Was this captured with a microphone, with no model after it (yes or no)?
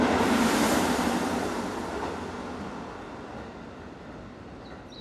yes